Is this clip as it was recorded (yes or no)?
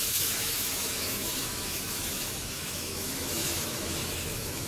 no